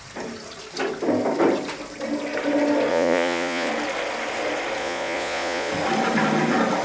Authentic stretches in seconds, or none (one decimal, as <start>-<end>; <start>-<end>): 0.0-2.9; 3.7-4.8; 5.7-6.8